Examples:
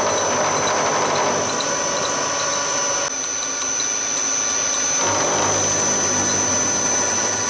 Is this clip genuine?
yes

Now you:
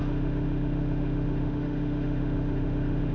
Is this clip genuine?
no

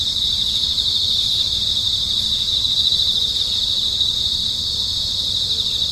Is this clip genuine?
yes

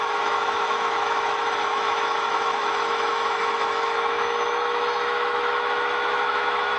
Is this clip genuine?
no